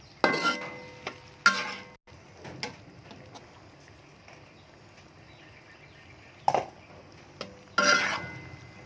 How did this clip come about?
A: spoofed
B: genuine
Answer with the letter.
B